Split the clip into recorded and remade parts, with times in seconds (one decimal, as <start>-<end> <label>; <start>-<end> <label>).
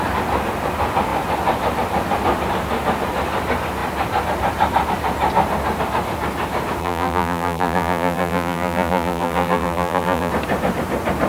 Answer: 0.0-6.8 recorded; 6.8-10.3 remade; 10.3-11.3 recorded